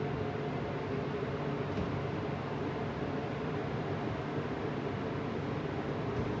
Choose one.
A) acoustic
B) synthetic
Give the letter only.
A